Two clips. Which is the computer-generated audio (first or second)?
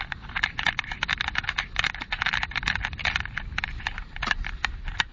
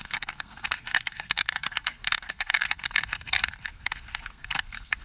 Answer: second